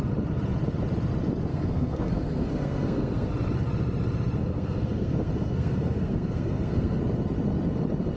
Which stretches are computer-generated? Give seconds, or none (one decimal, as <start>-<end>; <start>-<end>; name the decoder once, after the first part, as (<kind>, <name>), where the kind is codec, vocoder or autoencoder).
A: 1.5-3.3 (codec, SNAC); 4.4-7.0